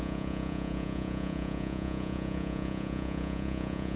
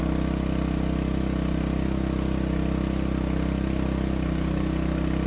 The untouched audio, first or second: second